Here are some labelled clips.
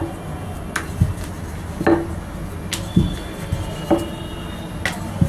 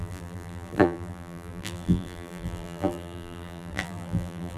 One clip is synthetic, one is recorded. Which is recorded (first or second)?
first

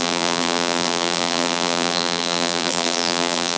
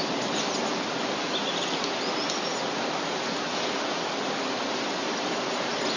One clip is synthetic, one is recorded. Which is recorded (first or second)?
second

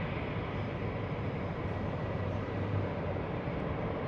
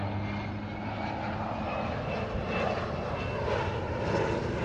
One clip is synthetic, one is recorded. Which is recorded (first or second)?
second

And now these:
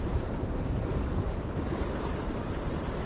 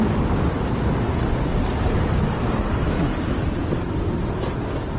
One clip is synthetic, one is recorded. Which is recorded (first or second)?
second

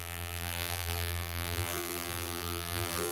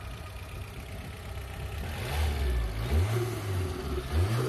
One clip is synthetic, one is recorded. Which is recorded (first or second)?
second